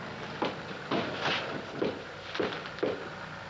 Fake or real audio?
real